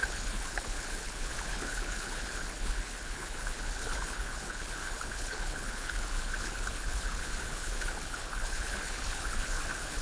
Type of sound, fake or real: fake